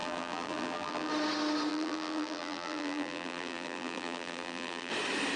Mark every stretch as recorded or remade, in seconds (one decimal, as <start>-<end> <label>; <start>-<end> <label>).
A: 0.0-1.1 remade; 1.1-1.7 recorded; 1.7-4.9 remade; 4.9-5.4 recorded